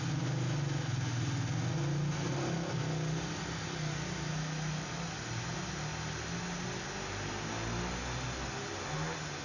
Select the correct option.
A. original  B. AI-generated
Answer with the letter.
A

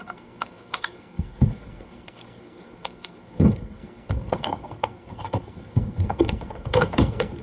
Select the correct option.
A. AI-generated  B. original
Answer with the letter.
A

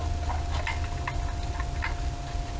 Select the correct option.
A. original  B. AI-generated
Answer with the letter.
A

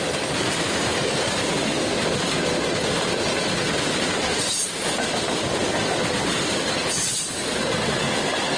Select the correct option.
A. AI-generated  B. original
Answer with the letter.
B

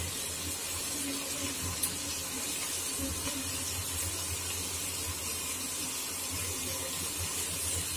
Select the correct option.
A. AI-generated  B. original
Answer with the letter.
B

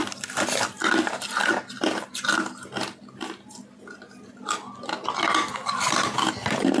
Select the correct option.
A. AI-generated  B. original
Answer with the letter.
B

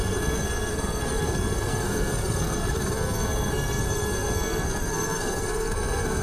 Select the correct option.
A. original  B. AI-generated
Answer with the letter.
B